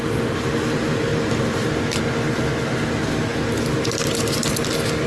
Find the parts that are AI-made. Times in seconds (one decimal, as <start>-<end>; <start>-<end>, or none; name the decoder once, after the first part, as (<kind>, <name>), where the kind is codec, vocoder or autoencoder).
none